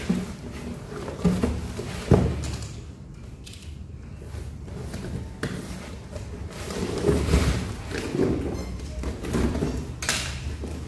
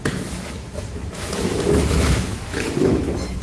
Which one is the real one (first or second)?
first